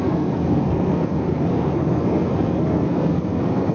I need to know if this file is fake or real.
fake